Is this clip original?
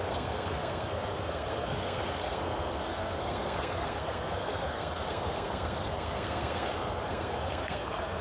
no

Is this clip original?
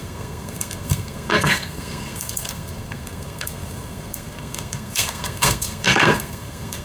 no